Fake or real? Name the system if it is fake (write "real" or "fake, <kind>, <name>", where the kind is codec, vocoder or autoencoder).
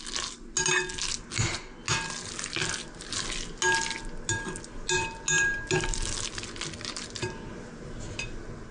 real